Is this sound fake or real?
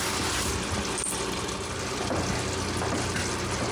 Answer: real